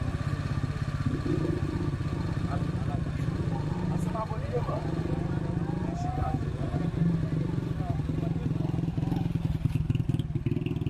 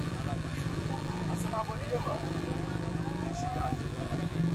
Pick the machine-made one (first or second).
second